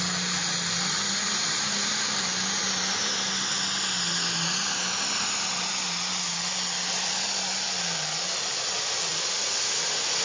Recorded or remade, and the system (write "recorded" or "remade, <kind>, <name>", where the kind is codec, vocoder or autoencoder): recorded